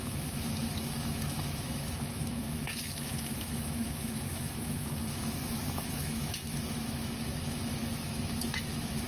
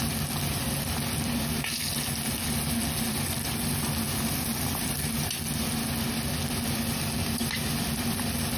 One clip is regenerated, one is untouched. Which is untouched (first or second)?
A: second